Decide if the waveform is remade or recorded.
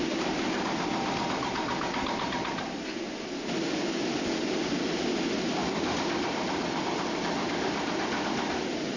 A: remade